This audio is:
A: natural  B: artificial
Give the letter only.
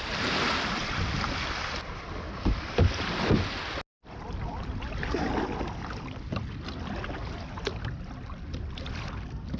A